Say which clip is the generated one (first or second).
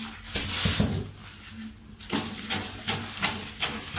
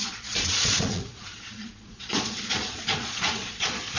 second